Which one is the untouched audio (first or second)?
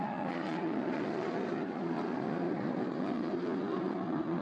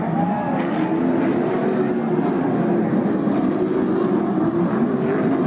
second